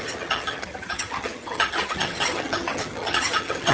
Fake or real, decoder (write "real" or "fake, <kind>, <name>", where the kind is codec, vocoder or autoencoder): fake, vocoder, HiFi-GAN